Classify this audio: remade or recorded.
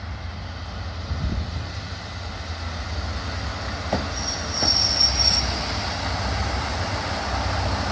recorded